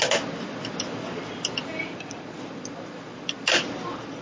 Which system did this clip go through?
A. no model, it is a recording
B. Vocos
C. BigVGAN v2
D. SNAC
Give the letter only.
A